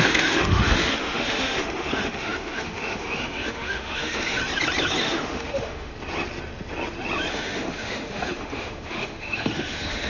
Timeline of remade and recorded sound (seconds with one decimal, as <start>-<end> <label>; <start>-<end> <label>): 0.0-4.4 remade; 4.4-5.0 recorded; 5.0-5.9 remade; 5.9-7.3 recorded; 7.3-10.1 remade